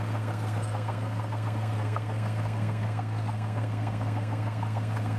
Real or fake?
fake